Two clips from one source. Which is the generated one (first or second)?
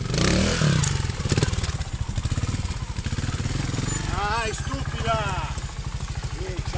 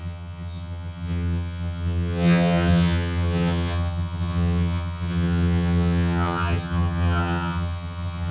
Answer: second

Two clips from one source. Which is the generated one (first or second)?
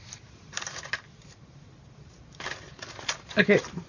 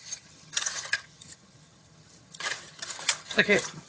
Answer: second